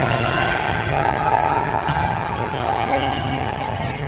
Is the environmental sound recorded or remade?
remade